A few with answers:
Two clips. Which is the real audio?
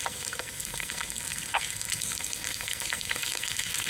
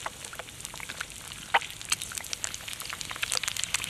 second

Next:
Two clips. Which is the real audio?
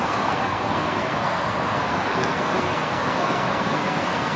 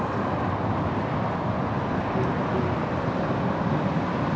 second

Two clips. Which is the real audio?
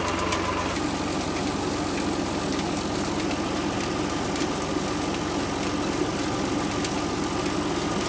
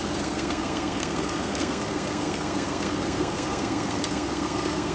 first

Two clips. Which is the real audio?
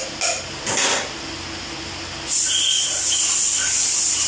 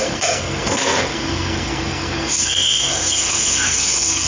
first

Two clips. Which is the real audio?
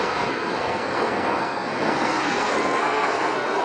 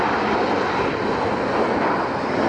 second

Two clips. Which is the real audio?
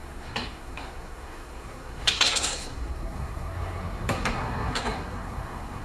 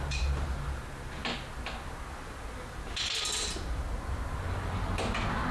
second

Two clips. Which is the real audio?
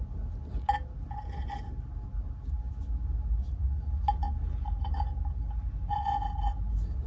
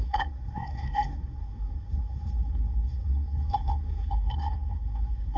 first